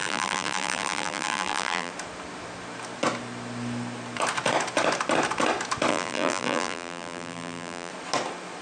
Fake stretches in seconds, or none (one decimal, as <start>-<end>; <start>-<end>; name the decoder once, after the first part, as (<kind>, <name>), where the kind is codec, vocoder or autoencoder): 0.0-1.9 (vocoder, BigVGAN v2); 5.9-7.9